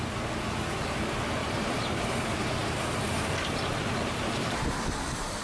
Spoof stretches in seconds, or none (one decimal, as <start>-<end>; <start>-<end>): 1.4-4.6